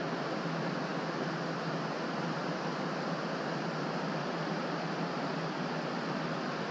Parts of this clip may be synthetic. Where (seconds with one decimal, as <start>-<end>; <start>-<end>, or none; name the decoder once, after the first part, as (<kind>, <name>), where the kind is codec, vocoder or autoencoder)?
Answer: none